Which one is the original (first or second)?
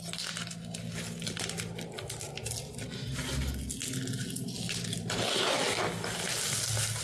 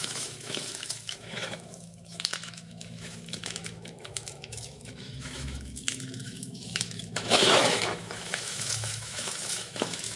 first